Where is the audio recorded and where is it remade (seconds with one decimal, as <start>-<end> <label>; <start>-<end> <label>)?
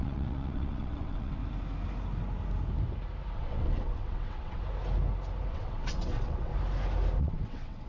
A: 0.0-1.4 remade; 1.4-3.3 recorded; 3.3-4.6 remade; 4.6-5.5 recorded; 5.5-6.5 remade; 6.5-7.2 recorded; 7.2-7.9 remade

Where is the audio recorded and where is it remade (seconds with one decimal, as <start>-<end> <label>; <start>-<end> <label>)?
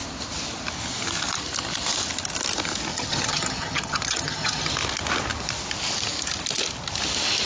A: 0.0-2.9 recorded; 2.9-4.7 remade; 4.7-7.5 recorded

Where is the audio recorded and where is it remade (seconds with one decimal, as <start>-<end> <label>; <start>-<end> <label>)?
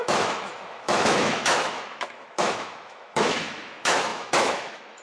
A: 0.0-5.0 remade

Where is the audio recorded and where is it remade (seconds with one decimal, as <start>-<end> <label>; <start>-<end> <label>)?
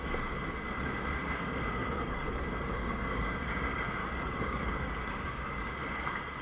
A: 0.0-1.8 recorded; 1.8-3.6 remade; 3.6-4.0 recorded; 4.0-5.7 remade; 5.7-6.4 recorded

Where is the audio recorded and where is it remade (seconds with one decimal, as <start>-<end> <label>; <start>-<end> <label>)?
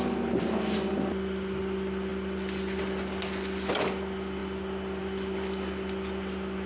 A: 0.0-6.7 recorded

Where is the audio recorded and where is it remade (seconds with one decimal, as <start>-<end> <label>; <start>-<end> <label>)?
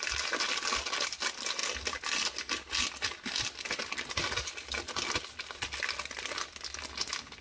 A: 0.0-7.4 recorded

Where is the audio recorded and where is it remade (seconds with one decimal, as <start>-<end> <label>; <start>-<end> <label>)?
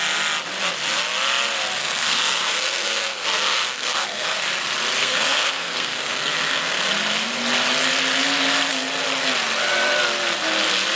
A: 0.0-1.8 recorded; 1.8-4.5 remade; 4.5-5.0 recorded; 5.0-6.9 remade; 6.9-11.0 recorded